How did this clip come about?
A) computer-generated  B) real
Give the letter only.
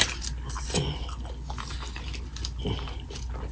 B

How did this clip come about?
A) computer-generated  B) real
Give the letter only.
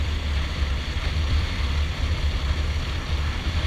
B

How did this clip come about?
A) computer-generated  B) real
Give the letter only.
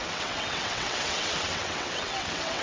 A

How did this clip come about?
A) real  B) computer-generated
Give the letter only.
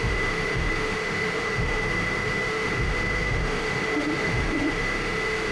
B